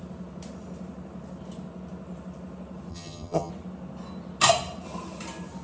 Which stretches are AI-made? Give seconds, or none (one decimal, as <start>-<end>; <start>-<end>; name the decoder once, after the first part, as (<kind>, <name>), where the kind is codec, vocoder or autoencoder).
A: 2.9-3.5 (vocoder, HiFi-GAN)